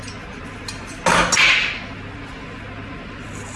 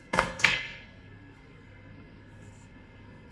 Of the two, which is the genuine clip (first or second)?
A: first